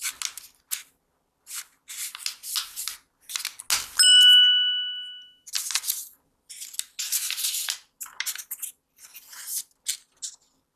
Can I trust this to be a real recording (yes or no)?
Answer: yes